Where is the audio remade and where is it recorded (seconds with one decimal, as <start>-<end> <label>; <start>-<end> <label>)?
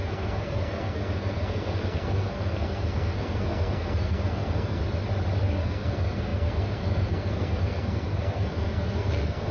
0.0-4.8 remade; 4.8-5.4 recorded; 5.4-9.5 remade